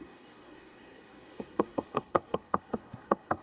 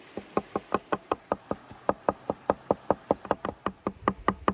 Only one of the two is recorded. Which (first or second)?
second